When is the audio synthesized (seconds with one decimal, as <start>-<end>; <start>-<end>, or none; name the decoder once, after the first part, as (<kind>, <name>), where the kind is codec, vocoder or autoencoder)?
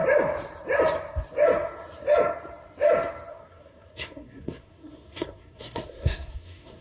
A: 3.3-6.8 (codec, SNAC)